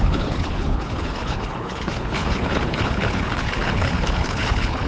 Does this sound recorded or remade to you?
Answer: remade